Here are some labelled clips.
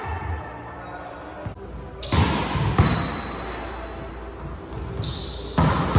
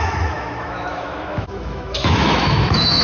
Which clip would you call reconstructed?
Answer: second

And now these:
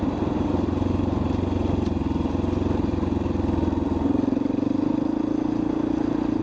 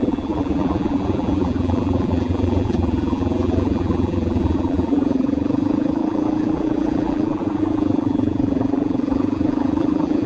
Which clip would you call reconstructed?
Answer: second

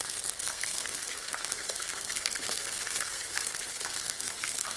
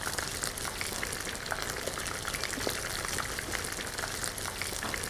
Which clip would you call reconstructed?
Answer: first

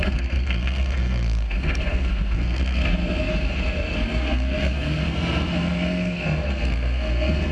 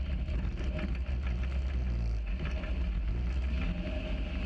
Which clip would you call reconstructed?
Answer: first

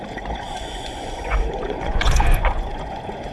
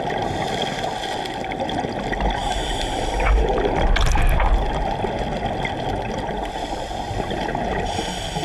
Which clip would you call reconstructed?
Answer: first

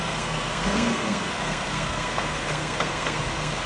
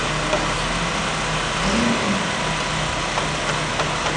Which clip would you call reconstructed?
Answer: first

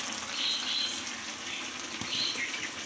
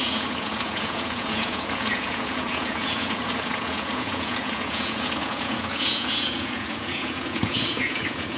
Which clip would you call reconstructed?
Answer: second